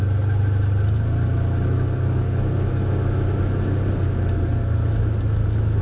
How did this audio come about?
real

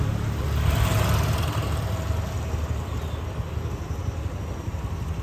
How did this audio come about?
real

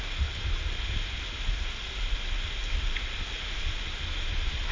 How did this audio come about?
real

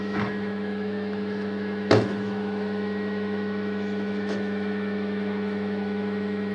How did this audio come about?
fake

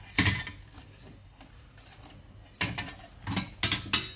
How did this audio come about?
real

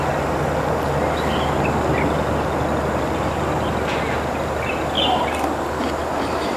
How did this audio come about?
real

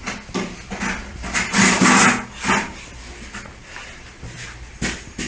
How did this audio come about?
real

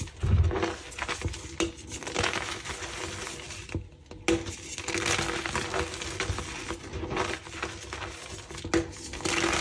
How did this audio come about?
real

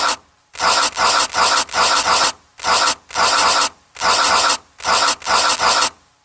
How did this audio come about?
real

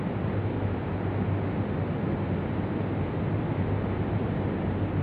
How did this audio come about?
real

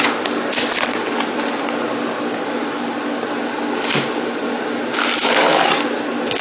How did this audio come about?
real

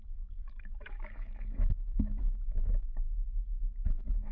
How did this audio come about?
fake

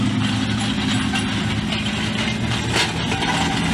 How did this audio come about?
real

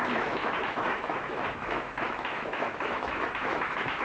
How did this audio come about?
fake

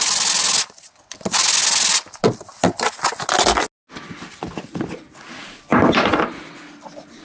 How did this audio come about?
real